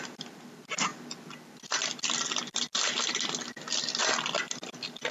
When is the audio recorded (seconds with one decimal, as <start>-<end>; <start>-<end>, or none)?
0.0-5.1

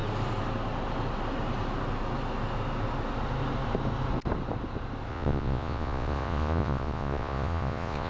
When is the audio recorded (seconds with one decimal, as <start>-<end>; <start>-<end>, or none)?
0.0-5.1

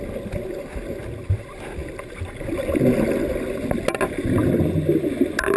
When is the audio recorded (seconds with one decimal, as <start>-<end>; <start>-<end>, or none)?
0.0-5.6

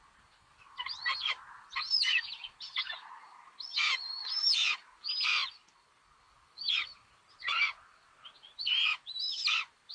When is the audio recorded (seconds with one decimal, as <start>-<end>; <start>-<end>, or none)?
0.0-9.9

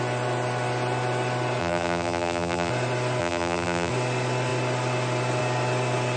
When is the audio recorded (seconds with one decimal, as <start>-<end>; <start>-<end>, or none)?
0.0-1.6; 2.7-3.2; 3.9-6.2